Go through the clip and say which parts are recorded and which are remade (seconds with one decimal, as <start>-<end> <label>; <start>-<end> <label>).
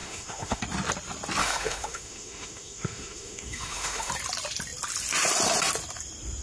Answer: 0.0-0.6 remade; 0.6-1.4 recorded; 1.4-4.1 remade; 4.1-6.4 recorded